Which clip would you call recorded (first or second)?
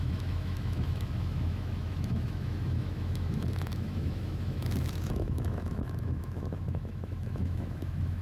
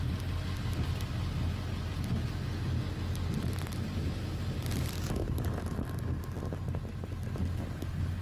second